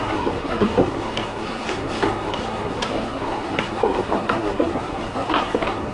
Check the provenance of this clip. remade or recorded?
remade